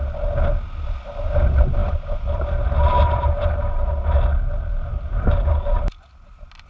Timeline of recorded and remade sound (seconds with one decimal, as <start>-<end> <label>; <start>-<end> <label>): 0.0-1.8 recorded; 1.8-3.9 remade; 3.9-4.9 recorded; 4.9-5.5 remade; 5.5-6.7 recorded

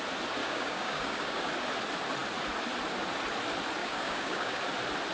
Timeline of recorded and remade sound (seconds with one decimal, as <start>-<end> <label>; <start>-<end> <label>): 0.0-0.4 recorded; 0.4-1.5 remade; 1.5-3.8 recorded; 3.8-4.6 remade; 4.6-5.1 recorded

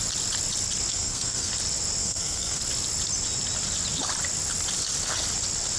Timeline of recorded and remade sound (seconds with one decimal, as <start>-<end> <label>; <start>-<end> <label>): 0.0-0.9 recorded; 0.9-1.5 remade; 1.5-2.0 recorded; 2.0-2.6 remade; 2.6-5.8 recorded

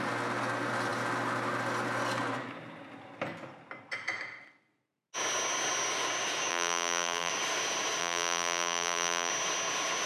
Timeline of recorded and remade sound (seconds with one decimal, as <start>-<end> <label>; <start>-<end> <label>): 0.0-6.5 recorded; 6.5-7.3 remade; 7.3-8.0 recorded; 8.0-9.3 remade; 9.3-10.1 recorded

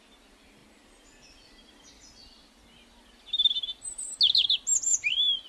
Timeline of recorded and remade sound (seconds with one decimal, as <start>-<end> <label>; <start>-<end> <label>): 0.0-5.5 recorded

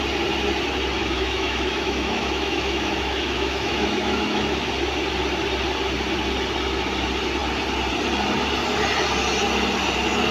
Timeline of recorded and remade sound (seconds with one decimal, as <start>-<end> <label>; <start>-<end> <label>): 0.0-1.0 recorded; 1.0-4.7 remade; 4.7-10.3 recorded

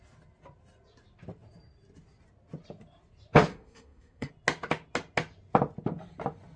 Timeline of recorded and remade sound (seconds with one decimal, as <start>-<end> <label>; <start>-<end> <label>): 0.0-3.5 recorded; 3.5-4.3 remade; 4.3-6.6 recorded